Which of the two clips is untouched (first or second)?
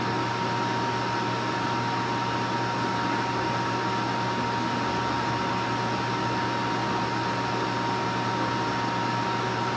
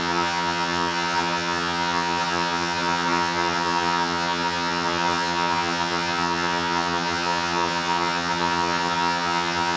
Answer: first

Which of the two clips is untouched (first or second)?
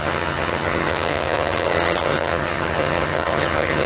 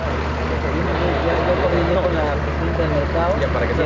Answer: second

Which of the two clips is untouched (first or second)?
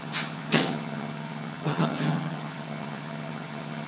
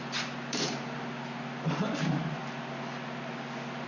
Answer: second